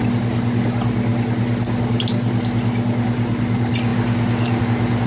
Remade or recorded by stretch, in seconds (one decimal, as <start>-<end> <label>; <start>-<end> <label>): 0.0-5.1 recorded